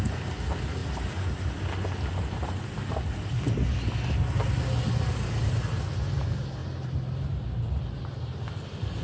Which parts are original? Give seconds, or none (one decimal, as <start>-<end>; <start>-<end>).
0.0-9.0